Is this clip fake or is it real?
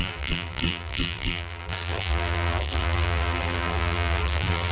fake